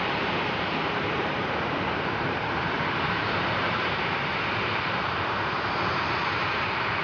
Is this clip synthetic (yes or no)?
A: yes